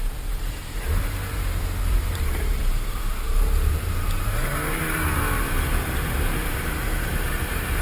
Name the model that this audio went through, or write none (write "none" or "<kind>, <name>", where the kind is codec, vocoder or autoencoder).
vocoder, BigVGAN v2